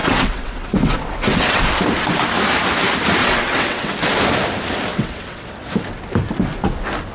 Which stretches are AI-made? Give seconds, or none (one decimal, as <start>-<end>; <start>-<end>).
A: 0.0-1.7; 3.2-3.9; 4.9-5.7